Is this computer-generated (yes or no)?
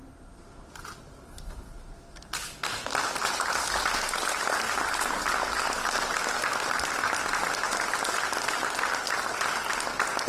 no